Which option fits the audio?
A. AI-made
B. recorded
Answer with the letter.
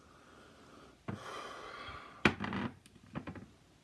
B